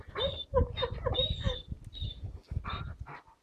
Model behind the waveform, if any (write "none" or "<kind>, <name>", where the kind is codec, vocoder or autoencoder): none